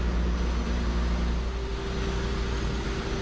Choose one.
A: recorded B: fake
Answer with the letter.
A